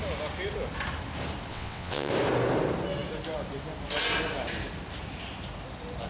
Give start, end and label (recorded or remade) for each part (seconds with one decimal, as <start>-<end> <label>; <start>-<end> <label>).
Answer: 0.0-1.5 recorded; 1.5-2.1 remade; 2.1-6.1 recorded